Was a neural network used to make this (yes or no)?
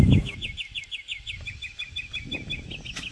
no